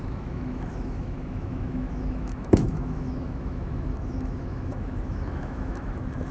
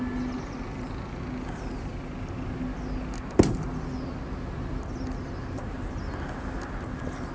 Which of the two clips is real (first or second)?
second